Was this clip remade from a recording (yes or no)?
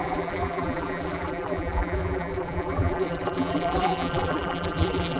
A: yes